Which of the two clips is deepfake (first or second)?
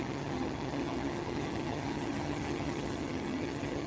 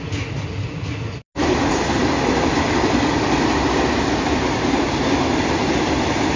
first